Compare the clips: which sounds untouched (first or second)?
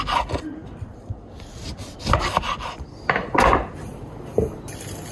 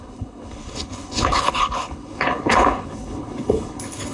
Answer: first